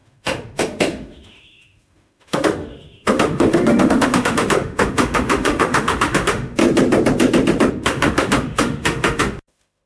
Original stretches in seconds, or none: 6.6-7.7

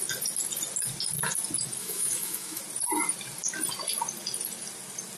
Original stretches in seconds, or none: 0.0-1.8; 2.6-5.2